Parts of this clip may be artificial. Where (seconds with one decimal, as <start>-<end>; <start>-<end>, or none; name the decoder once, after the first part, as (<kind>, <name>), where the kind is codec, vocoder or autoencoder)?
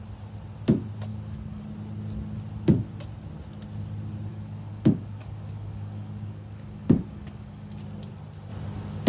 1.1-1.6 (codec, DAC); 4.3-7.8